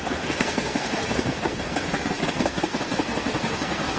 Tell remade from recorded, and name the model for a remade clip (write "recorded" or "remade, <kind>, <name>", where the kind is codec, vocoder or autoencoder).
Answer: remade, codec, SNAC